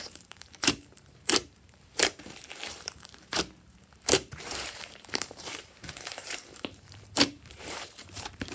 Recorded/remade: remade